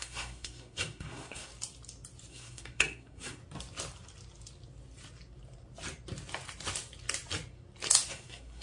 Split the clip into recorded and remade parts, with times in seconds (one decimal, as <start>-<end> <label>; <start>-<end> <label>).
0.0-1.5 remade; 1.5-2.3 recorded; 2.3-3.4 remade; 3.4-8.1 recorded; 8.1-8.6 remade